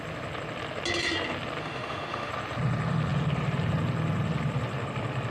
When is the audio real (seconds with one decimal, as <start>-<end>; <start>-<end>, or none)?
0.0-1.6; 2.3-5.3